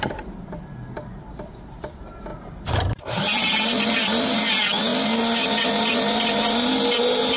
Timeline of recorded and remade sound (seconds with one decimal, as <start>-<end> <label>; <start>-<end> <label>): 0.0-2.3 recorded; 2.3-4.4 remade; 4.4-7.4 recorded